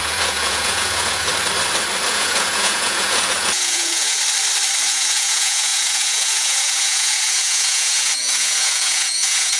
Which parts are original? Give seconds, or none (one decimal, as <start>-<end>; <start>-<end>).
1.3-2.1; 4.2-4.8